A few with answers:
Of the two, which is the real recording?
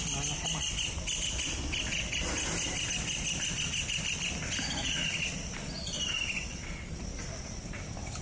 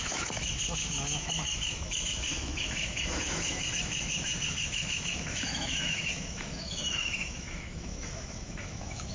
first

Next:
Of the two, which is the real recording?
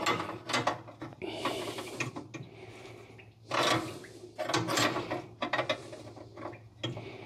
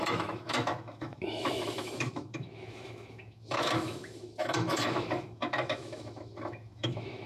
first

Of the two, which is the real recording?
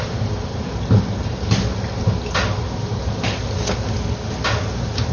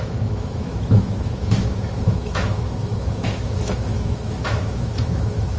first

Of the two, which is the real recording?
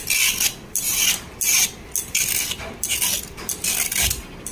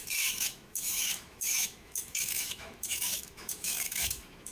first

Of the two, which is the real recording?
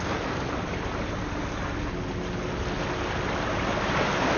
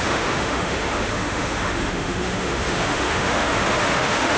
first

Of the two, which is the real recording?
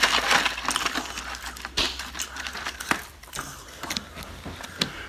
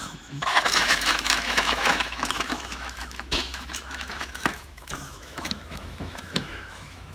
first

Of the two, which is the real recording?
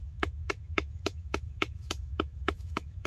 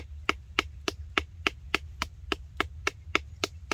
second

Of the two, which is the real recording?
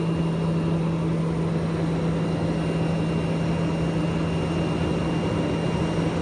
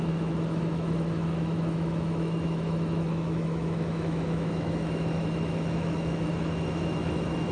first